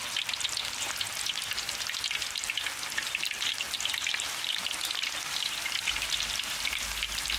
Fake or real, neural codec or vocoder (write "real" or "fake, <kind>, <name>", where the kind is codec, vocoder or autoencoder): fake, vocoder, BigVGAN v2